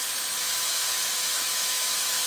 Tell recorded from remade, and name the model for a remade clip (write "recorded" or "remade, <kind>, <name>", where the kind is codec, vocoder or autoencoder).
remade, autoencoder, DAC-VAE